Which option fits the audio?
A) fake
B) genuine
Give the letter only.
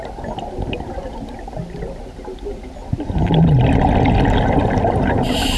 B